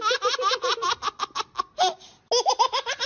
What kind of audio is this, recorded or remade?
recorded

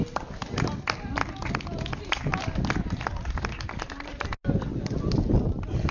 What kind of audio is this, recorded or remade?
recorded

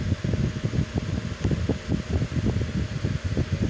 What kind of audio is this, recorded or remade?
recorded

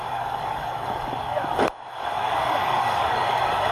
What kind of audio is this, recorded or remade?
remade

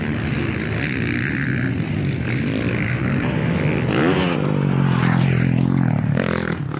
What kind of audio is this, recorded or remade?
recorded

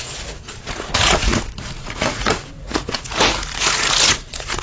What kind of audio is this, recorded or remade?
remade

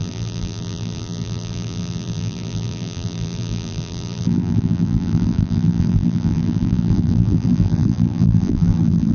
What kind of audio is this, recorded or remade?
remade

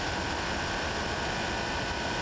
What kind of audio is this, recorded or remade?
recorded